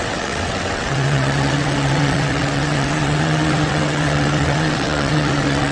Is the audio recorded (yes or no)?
no